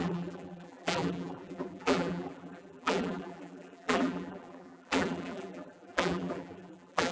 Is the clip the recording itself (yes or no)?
no